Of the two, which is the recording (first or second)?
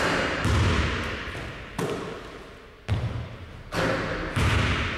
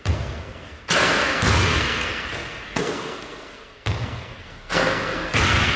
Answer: first